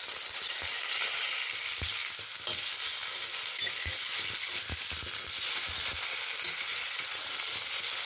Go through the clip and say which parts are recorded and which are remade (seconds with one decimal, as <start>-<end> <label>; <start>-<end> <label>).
0.0-6.7 recorded; 6.7-7.3 remade; 7.3-8.1 recorded